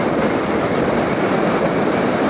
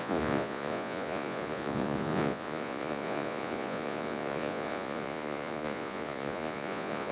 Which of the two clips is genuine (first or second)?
first